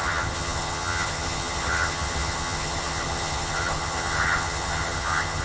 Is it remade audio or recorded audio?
remade